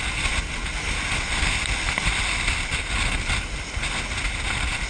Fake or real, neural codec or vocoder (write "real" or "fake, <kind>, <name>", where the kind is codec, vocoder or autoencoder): real